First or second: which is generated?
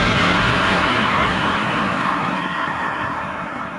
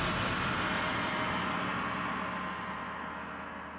first